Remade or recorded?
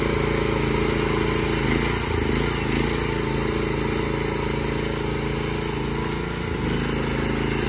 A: recorded